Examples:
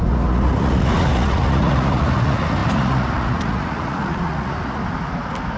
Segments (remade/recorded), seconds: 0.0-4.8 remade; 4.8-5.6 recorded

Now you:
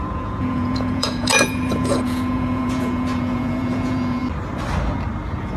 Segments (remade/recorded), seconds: 0.0-4.2 remade; 4.2-5.6 recorded

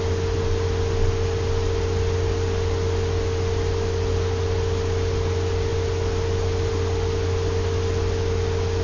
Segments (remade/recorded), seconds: 0.0-8.8 recorded